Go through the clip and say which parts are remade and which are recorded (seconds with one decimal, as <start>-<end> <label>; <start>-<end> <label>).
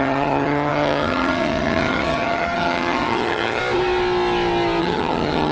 0.0-3.6 remade; 3.6-4.8 recorded; 4.8-5.5 remade